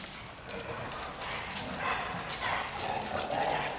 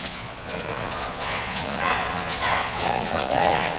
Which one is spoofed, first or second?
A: second